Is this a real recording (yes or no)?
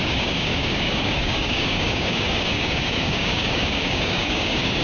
no